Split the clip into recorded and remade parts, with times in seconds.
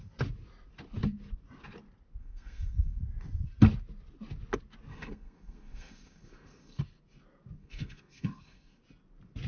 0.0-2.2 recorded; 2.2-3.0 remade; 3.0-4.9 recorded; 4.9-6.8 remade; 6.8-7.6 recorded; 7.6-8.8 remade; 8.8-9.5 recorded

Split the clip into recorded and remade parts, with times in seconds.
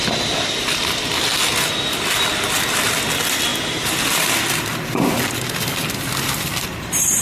0.0-7.2 remade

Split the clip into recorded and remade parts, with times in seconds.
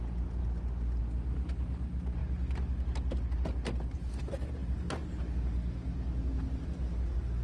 0.0-7.4 recorded